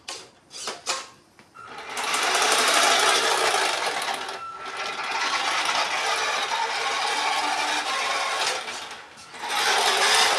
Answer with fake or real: real